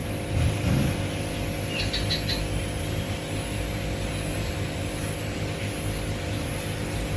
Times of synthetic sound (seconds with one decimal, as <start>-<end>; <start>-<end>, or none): none